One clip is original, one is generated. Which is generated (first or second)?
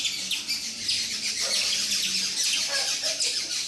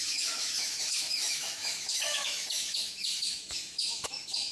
second